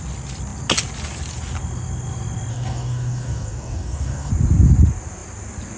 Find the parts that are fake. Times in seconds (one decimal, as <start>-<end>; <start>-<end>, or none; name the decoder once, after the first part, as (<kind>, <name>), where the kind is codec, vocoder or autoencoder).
2.5-4.3 (codec, DAC)